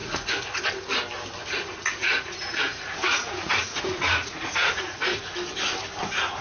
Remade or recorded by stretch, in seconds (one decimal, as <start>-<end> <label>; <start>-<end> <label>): 0.0-0.6 remade; 0.6-1.4 recorded; 1.4-5.2 remade; 5.2-6.4 recorded